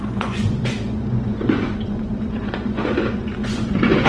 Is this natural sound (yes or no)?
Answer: no